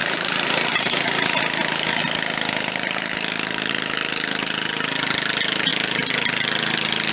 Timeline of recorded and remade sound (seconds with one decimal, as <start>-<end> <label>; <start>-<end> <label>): 0.0-1.4 remade; 1.4-7.1 recorded